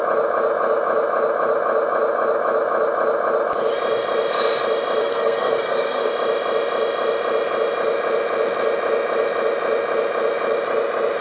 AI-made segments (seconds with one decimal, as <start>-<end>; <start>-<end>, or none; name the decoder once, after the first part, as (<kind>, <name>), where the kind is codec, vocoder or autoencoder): 5.0-6.1 (codec, SNAC)